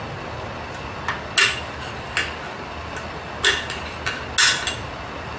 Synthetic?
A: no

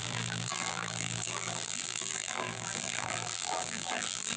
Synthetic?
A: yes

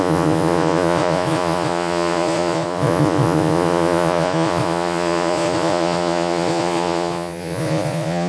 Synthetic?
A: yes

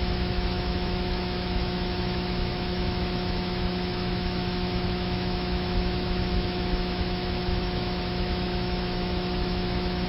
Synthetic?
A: yes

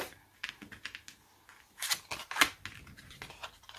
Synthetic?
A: no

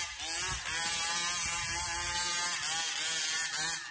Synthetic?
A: no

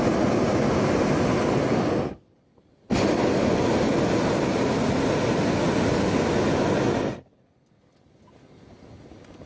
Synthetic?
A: no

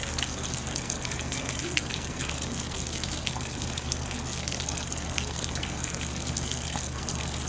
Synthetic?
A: yes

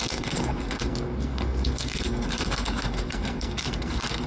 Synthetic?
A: yes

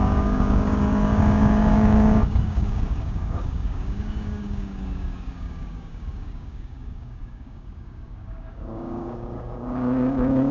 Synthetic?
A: yes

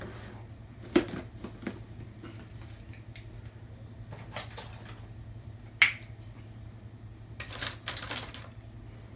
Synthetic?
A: no